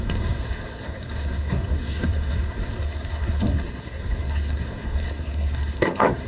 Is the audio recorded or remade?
remade